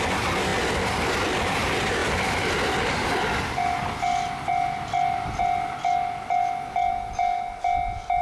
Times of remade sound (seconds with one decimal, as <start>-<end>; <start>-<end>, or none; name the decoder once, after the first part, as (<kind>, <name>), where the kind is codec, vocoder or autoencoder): none